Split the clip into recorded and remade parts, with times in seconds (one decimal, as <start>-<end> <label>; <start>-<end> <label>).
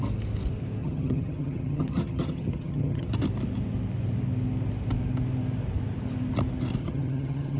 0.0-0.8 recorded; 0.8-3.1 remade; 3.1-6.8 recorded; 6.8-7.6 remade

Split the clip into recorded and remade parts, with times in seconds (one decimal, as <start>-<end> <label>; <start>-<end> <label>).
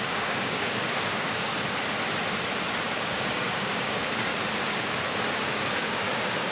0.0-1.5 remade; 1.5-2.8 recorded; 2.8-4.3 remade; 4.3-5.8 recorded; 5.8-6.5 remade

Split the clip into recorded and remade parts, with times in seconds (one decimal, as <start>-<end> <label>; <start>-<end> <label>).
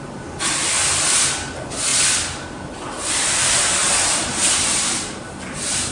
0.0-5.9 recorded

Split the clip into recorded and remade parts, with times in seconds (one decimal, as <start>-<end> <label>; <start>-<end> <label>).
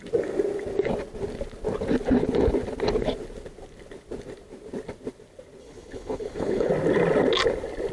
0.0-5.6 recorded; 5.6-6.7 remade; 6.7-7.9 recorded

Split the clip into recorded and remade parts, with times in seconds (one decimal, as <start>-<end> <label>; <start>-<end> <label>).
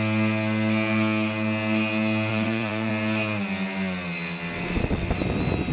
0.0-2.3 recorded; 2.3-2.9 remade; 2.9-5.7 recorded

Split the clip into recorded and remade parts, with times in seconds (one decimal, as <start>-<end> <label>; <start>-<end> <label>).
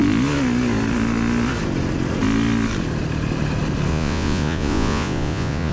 0.0-3.9 recorded; 3.9-5.7 remade